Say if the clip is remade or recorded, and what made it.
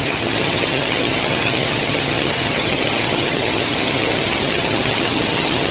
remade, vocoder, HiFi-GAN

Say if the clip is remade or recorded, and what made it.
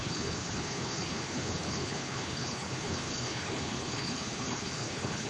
remade, codec, HILCodec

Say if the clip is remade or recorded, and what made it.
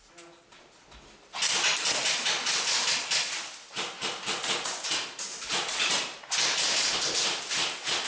recorded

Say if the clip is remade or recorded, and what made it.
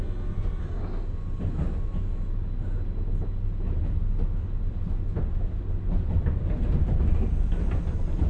recorded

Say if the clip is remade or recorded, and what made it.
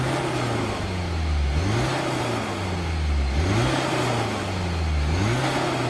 recorded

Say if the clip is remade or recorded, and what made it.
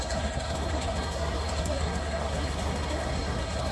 remade, codec, SNAC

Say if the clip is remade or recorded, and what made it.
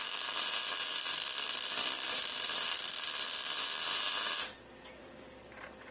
remade, vocoder, BigVGAN v2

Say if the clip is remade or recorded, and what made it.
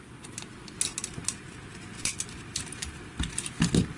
recorded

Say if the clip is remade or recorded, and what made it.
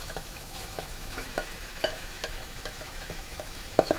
remade, autoencoder, DAC-VAE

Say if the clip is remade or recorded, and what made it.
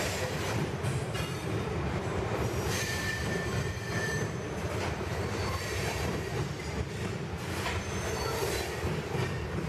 remade, vocoder, BigVGAN v2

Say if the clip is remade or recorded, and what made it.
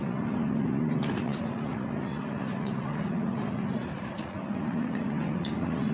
remade, vocoder, Vocos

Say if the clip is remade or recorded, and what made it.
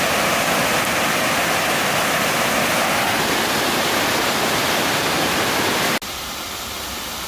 recorded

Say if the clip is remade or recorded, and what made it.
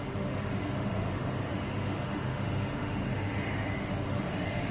remade, autoencoder, DAC-VAE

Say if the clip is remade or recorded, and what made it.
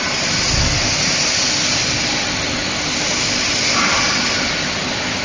recorded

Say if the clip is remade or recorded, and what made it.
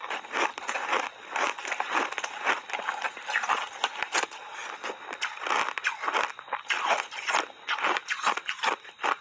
recorded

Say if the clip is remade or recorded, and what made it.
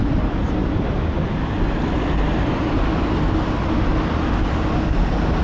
recorded